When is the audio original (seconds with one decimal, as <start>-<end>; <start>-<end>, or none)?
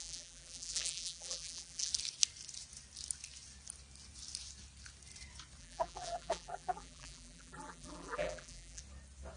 1.9-5.6; 8.8-9.4